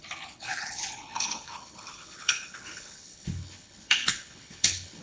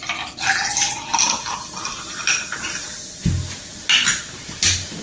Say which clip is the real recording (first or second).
second